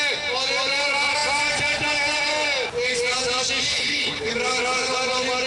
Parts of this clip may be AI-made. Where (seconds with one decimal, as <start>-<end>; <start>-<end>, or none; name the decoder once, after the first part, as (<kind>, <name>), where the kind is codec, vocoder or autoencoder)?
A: 3.7-4.3 (codec, HILCodec)